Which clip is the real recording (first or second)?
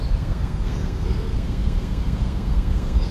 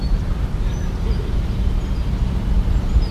second